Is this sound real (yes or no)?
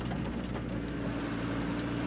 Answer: yes